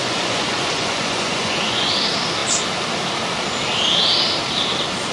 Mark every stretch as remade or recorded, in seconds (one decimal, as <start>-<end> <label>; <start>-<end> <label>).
0.0-1.9 remade; 1.9-5.1 recorded